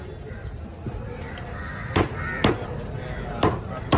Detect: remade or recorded recorded